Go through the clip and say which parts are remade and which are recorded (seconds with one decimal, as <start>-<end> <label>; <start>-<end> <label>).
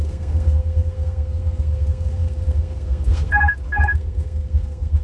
0.0-5.0 remade